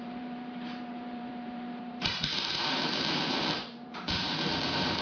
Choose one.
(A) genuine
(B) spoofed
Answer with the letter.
B